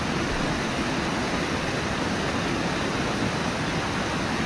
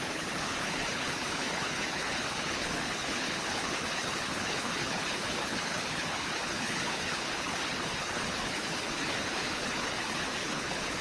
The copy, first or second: second